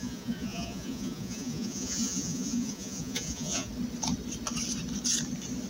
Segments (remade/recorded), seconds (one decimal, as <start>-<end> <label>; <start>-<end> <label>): 0.0-3.7 remade; 3.7-5.7 recorded